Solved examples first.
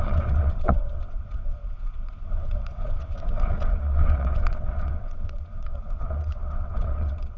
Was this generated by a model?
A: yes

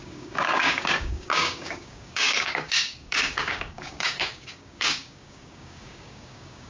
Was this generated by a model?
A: yes